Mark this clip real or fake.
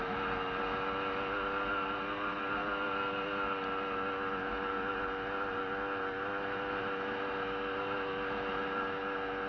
real